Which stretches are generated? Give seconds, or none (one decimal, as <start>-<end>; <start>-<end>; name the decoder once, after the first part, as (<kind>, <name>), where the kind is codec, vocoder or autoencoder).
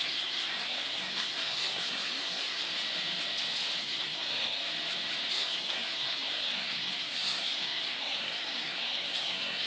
0.0-2.7 (codec, SNAC); 3.8-4.6; 5.3-9.7